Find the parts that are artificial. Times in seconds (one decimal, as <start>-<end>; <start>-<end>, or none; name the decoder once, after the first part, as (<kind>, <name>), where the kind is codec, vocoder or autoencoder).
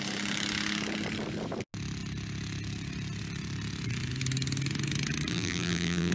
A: 5.3-6.1 (vocoder, BigVGAN v2)